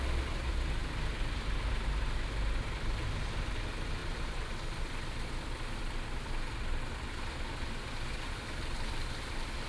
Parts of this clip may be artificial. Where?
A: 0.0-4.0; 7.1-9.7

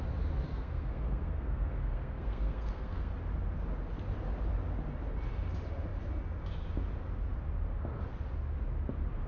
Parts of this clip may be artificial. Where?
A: 0.5-3.1

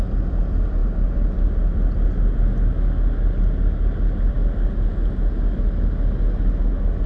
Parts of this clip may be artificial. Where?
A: none

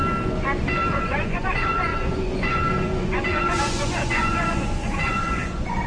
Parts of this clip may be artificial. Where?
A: 0.9-5.9

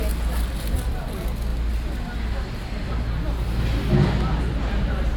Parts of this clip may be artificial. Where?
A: none

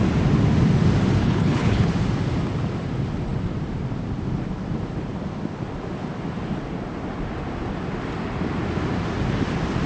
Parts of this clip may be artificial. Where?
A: 1.2-1.9

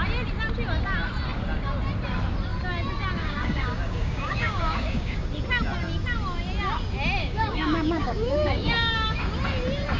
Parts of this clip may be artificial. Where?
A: 3.2-5.3; 7.2-9.3